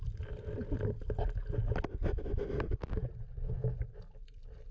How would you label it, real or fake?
real